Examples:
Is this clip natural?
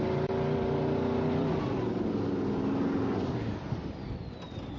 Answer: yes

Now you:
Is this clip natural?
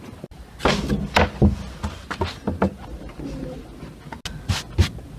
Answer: yes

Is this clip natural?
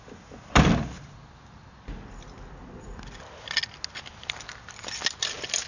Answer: yes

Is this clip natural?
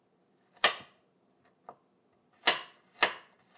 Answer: yes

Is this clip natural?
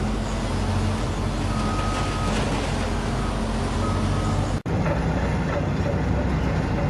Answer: yes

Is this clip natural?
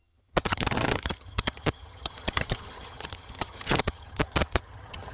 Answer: no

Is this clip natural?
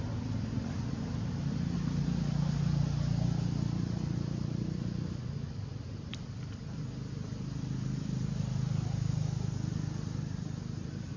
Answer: yes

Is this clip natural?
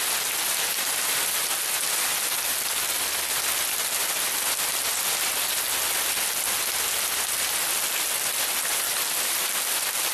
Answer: yes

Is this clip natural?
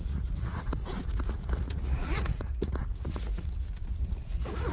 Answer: no